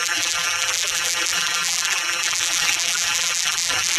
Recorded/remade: remade